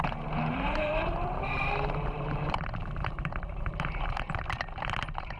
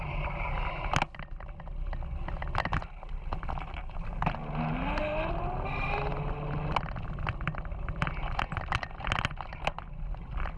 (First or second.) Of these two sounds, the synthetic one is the first